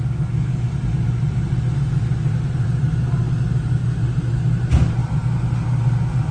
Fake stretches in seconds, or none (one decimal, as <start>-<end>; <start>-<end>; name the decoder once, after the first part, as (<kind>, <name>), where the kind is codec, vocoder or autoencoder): 0.9-3.2 (vocoder, BigVGAN v2)